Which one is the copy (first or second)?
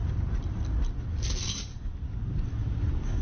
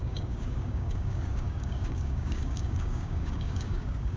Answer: second